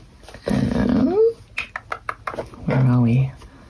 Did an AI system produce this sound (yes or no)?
no